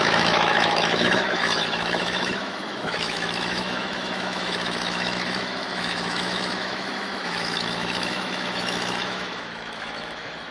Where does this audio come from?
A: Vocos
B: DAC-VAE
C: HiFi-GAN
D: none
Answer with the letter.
B